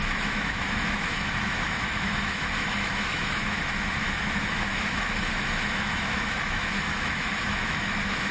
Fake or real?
fake